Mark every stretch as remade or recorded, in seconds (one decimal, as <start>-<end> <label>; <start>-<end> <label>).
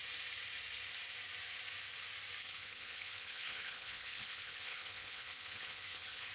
0.0-2.4 recorded; 2.4-6.3 remade